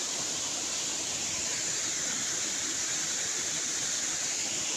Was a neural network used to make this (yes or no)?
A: yes